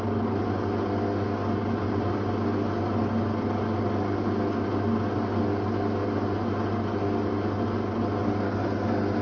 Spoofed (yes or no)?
no